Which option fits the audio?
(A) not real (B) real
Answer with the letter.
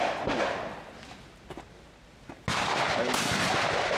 B